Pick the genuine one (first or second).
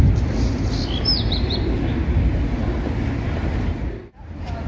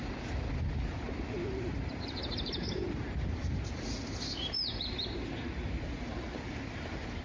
first